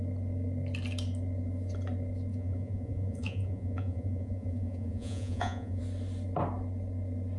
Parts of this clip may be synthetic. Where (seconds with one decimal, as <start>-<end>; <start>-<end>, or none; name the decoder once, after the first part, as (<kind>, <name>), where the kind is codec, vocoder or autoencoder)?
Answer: 2.3-5.8 (vocoder, Vocos)